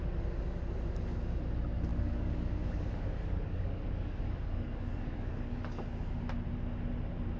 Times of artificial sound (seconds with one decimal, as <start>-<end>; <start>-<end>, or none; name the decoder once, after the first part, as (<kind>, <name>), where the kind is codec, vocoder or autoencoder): 1.9-6.2 (codec, DAC)